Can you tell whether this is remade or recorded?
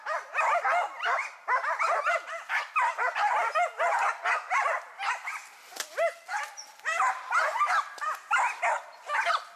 recorded